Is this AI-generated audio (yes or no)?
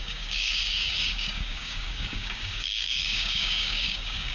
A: yes